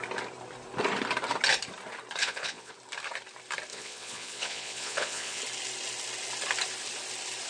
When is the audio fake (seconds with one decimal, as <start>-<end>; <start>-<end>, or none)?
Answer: 2.2-2.7; 3.7-5.4